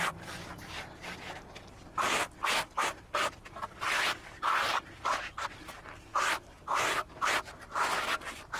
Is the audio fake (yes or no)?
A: yes